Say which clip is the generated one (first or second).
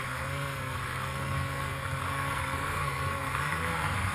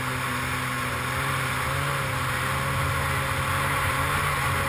first